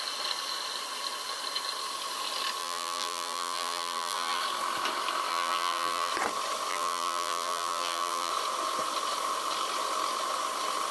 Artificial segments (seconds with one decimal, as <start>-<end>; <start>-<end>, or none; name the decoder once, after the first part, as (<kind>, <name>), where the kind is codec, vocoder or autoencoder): 2.6-4.4 (vocoder, BigVGAN v2); 5.3-6.1; 6.7-8.3